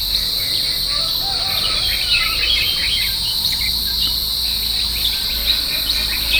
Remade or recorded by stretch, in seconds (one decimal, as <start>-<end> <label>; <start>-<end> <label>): 0.0-2.8 recorded; 2.8-3.6 remade; 3.6-6.4 recorded